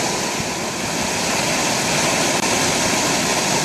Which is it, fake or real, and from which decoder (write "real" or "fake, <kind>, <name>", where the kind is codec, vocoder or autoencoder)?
real